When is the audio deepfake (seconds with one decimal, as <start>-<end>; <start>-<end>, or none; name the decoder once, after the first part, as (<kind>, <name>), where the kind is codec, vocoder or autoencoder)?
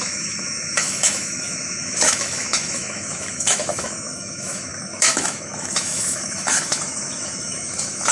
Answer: 0.0-8.1 (autoencoder, DAC-VAE)